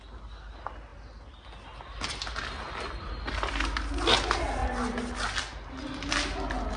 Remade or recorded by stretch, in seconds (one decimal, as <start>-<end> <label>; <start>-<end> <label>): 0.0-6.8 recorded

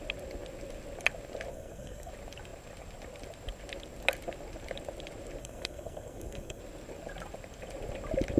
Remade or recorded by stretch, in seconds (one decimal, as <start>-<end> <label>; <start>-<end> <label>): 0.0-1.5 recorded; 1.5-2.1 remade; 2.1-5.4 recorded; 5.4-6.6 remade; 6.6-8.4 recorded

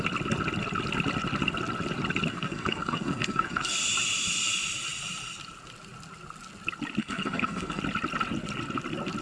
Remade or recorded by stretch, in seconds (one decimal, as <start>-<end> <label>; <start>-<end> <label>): 0.0-2.3 recorded; 2.3-3.8 remade; 3.8-7.0 recorded; 7.0-7.8 remade; 7.8-9.2 recorded

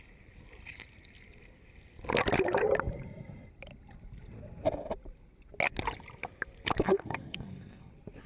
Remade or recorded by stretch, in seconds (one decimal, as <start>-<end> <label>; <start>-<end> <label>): 0.0-6.8 recorded; 6.8-7.9 remade; 7.9-8.3 recorded